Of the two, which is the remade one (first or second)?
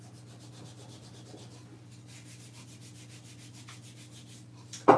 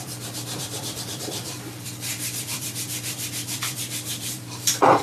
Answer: second